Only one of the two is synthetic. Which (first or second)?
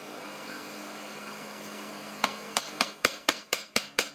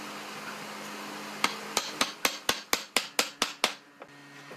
first